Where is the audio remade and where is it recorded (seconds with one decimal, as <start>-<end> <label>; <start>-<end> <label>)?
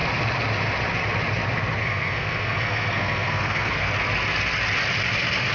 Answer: 0.0-1.8 recorded; 1.8-3.9 remade; 3.9-5.5 recorded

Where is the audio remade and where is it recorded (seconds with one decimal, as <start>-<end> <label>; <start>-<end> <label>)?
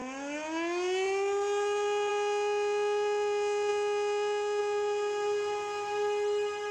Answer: 0.0-6.7 recorded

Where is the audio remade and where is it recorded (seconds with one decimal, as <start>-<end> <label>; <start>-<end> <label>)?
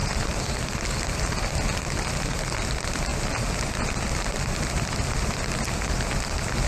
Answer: 0.0-6.7 recorded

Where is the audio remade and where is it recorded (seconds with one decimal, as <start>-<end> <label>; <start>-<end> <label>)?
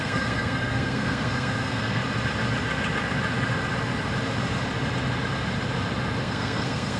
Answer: 0.0-2.0 remade; 2.0-6.2 recorded; 6.2-7.0 remade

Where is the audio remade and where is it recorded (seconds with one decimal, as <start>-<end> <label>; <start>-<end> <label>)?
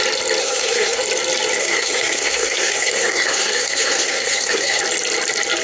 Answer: 0.0-0.4 recorded; 0.4-1.0 remade; 1.0-1.6 recorded; 1.6-4.8 remade; 4.8-5.6 recorded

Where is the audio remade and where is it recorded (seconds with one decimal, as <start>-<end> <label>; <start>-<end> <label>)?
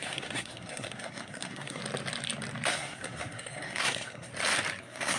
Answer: 0.0-1.8 remade; 1.8-2.7 recorded; 2.7-4.3 remade; 4.3-4.8 recorded; 4.8-5.2 remade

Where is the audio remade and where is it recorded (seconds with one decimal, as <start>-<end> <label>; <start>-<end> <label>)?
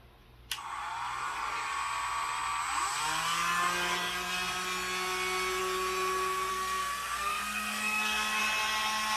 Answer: 0.0-6.5 recorded; 6.5-8.4 remade; 8.4-9.2 recorded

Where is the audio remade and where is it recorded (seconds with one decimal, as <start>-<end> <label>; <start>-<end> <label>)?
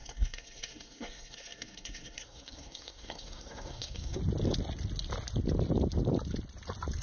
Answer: 0.0-4.2 remade; 4.2-7.0 recorded